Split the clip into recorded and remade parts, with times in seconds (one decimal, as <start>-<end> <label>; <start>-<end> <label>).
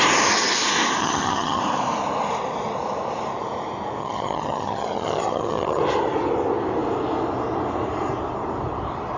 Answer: 0.0-1.0 recorded; 1.0-1.6 remade; 1.6-4.0 recorded; 4.0-5.8 remade; 5.8-9.2 recorded